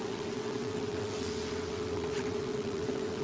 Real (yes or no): no